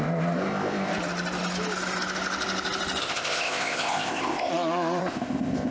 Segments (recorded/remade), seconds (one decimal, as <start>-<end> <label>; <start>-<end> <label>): 0.0-0.9 remade; 0.9-3.0 recorded; 3.0-4.5 remade; 4.5-5.0 recorded; 5.0-5.7 remade